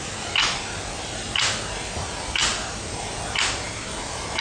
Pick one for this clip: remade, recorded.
recorded